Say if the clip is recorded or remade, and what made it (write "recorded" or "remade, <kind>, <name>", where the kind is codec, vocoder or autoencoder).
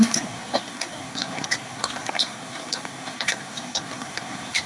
remade, codec, SNAC